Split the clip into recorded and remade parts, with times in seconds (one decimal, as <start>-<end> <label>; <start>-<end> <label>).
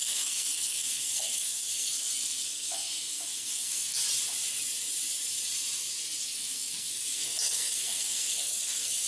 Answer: 0.0-4.0 remade; 4.0-6.2 recorded; 6.2-9.1 remade